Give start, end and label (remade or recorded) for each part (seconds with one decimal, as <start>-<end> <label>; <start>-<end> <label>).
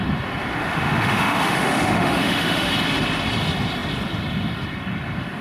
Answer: 0.0-0.6 recorded; 0.6-2.7 remade; 2.7-5.4 recorded